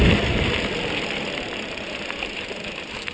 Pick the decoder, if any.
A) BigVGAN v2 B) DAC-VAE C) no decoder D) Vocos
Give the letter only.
A